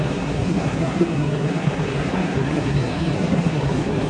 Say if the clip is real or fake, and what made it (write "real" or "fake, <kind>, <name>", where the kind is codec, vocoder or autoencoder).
fake, codec, SNAC